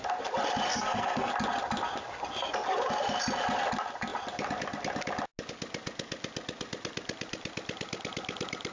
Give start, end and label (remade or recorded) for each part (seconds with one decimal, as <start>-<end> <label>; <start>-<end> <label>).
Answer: 0.0-0.7 recorded; 0.7-1.3 remade; 1.3-8.7 recorded